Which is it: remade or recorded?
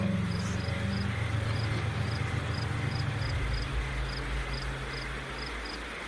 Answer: recorded